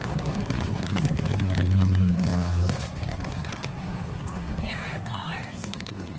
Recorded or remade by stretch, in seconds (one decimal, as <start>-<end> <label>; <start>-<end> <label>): 0.0-6.2 remade